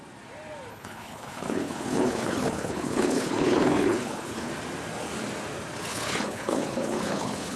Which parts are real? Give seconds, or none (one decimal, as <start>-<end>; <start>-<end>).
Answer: 0.0-0.7; 4.5-5.9